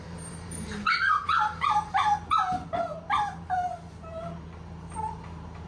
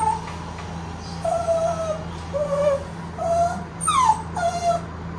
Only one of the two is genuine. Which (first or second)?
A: second